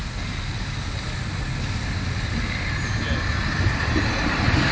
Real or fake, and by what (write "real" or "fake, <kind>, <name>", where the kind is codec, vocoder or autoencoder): real